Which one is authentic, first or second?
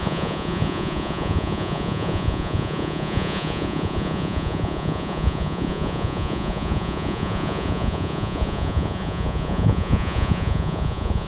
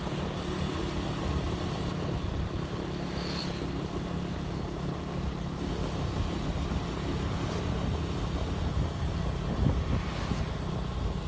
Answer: second